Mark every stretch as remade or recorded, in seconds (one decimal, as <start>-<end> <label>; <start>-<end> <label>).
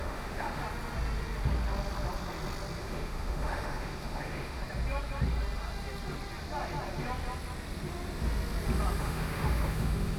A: 0.0-0.6 remade; 0.6-2.8 recorded; 2.8-4.6 remade; 4.6-9.0 recorded; 9.0-10.2 remade